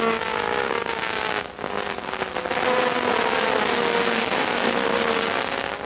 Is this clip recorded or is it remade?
recorded